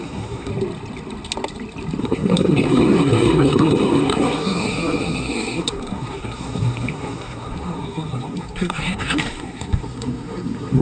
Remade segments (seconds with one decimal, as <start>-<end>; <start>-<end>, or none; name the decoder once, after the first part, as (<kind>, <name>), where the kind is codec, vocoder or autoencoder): 0.0-0.5 (codec, SNAC); 2.0-10.8